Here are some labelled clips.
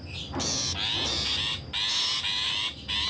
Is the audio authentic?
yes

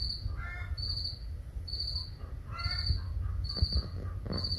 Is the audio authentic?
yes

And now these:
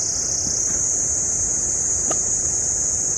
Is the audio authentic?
yes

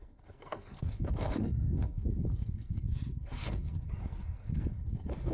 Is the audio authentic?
no